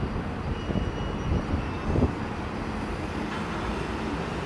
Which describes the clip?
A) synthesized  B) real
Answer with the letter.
B